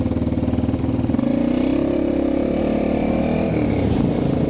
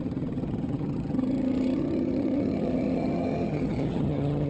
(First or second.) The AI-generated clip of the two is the second